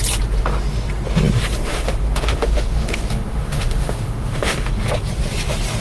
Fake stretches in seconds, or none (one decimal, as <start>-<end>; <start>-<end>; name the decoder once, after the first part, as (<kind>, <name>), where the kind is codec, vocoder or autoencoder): 1.7-4.7 (autoencoder, DAC-VAE)